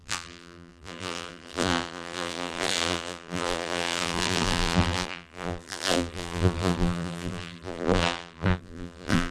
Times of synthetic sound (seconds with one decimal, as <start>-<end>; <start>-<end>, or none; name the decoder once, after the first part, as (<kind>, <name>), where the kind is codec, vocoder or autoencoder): 0.0-9.3 (vocoder, BigVGAN v2)